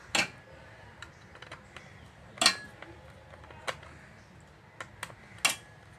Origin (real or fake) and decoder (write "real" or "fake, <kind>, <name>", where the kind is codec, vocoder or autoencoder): real